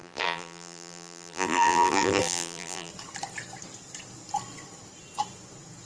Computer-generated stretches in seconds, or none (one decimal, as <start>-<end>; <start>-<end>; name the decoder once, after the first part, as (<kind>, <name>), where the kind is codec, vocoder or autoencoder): 0.0-2.9 (vocoder, BigVGAN v2)